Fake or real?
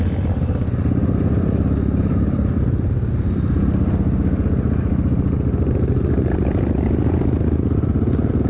real